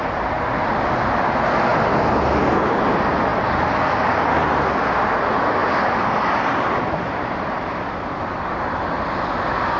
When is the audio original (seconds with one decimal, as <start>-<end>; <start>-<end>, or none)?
0.0-5.6; 8.9-9.8